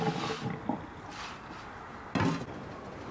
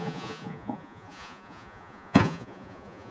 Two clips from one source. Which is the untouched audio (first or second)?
first